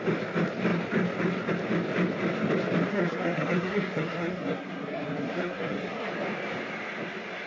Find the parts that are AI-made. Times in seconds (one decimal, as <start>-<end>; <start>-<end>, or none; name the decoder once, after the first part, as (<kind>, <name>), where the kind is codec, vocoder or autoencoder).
2.9-6.1 (codec, SNAC)